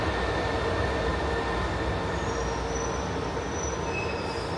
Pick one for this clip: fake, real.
real